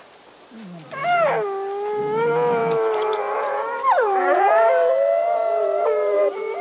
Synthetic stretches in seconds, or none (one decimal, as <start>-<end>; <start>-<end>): 2.6-6.6